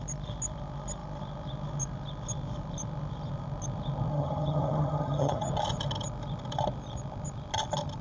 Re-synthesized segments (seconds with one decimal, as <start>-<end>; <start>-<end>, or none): 4.1-5.5